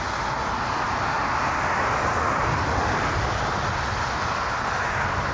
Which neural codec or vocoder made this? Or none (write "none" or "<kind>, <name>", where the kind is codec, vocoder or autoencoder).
none